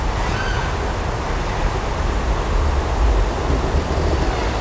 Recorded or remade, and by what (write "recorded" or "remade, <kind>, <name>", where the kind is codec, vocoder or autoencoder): recorded